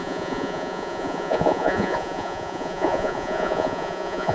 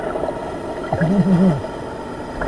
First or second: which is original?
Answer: second